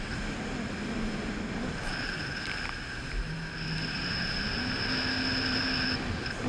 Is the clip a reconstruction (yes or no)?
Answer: no